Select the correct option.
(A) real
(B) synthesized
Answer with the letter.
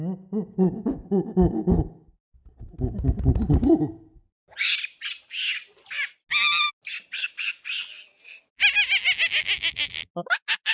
A